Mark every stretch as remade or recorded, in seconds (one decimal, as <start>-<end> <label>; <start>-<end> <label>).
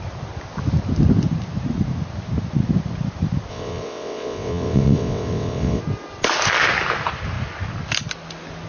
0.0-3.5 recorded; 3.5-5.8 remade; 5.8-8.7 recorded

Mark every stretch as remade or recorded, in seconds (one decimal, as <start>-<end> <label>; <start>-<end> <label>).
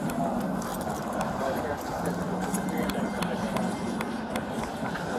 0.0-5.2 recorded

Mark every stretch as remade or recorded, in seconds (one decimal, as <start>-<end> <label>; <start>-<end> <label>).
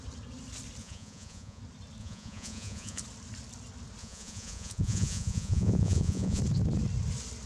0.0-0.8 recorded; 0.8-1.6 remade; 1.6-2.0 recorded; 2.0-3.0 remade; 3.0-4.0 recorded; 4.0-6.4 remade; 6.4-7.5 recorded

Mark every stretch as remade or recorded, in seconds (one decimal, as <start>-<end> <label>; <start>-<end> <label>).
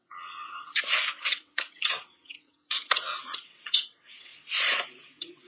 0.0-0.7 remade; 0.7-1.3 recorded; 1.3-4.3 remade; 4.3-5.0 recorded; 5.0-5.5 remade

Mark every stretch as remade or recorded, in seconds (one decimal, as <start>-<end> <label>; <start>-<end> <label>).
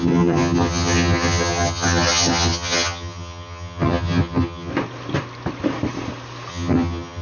0.0-4.7 remade; 4.7-6.5 recorded; 6.5-7.2 remade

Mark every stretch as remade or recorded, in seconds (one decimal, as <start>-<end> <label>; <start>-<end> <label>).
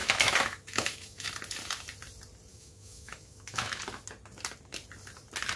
0.0-1.3 remade; 1.3-2.5 recorded; 2.5-3.8 remade; 3.8-5.6 recorded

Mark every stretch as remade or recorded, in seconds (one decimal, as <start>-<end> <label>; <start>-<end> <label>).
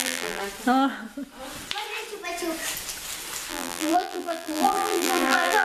0.0-0.4 remade; 0.4-3.5 recorded; 3.5-5.6 remade